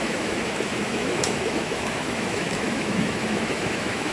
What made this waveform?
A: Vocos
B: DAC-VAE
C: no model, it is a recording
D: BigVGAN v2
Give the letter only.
B